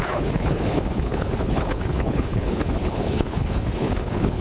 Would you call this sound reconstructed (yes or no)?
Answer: yes